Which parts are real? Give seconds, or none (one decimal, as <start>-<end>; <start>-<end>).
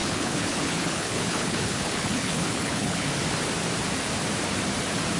3.1-5.2